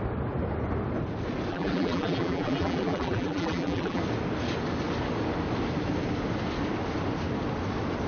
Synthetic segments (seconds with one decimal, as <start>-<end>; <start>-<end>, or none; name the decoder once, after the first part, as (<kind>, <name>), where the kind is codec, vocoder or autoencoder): 1.5-4.0 (vocoder, BigVGAN v2)